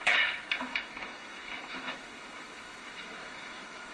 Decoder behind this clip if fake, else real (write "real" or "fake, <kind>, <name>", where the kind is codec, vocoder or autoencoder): fake, autoencoder, DAC-VAE